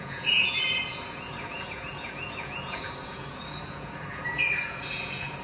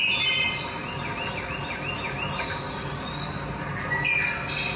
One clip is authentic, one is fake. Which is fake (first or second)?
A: first